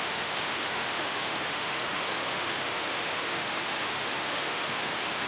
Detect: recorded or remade remade